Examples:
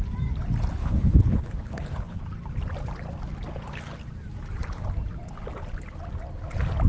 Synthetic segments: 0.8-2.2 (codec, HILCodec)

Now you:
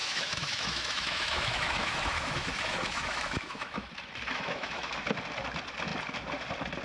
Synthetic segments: 0.0-3.9 (autoencoder, DAC-VAE); 4.3-4.9

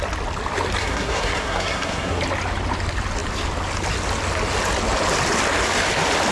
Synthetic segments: 0.8-2.2 (codec, SNAC)

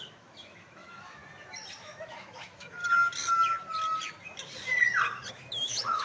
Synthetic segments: 0.0-1.2 (autoencoder, DAC-VAE); 1.8-2.8; 5.3-6.0

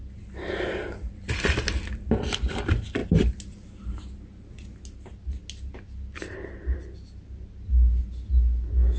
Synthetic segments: none

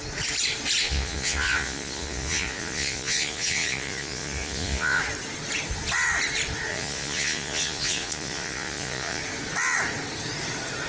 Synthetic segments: 0.8-5.0 (vocoder, Vocos); 6.7-9.2